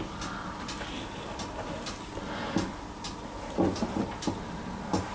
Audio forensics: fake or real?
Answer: real